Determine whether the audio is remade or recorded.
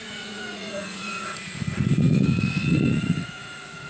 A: remade